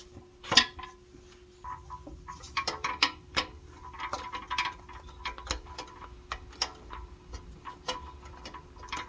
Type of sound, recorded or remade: recorded